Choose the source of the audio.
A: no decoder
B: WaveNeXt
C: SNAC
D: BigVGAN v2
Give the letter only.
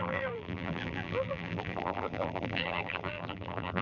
D